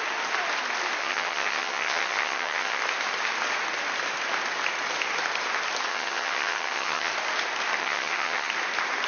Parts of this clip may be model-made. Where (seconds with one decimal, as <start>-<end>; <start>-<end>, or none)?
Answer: 1.0-2.8; 5.9-7.1; 7.8-8.5

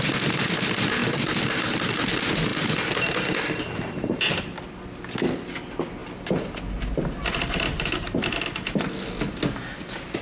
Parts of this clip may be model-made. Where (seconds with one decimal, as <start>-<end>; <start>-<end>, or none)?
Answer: none

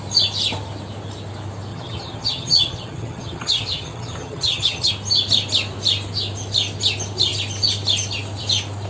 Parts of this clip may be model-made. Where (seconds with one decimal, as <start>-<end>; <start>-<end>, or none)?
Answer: 1.7-4.9

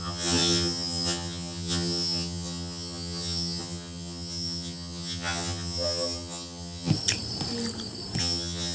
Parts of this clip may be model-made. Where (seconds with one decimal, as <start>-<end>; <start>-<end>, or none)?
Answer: 0.0-6.9; 8.2-8.7

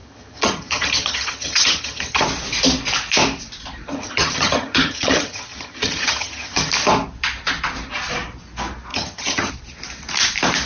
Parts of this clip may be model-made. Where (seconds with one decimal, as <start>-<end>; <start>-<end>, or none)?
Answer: 0.0-2.2; 3.9-6.7; 8.9-9.5